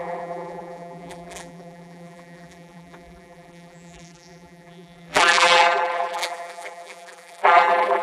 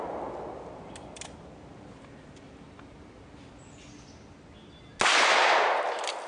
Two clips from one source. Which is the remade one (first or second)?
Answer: first